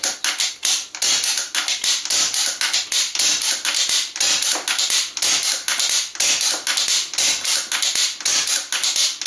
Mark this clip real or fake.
real